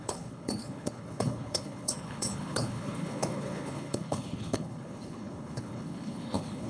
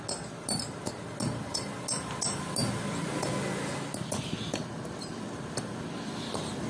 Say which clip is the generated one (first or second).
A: first